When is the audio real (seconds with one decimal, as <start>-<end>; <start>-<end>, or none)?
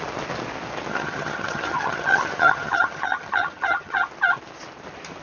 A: 0.0-0.9; 4.0-5.2